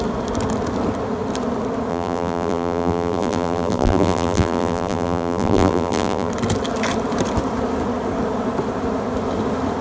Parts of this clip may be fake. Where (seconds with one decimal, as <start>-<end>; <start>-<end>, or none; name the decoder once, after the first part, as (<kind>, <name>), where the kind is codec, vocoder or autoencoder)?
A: 1.9-6.3 (vocoder, BigVGAN v2)